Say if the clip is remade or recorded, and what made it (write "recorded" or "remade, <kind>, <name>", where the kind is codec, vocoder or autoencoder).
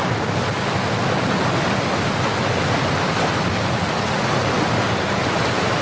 recorded